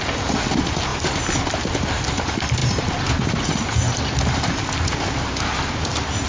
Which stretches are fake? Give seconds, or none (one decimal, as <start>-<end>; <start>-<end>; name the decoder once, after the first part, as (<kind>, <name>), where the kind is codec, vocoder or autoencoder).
none

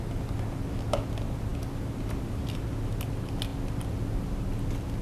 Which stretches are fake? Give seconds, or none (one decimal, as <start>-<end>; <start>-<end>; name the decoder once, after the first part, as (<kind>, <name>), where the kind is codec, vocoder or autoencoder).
none